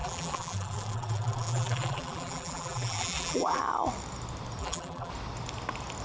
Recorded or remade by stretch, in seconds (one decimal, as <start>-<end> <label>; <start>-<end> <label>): 0.0-3.6 remade; 3.6-4.6 recorded; 4.6-5.1 remade; 5.1-6.0 recorded

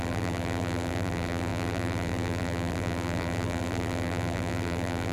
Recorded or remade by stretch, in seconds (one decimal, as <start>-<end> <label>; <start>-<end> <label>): 0.0-5.1 remade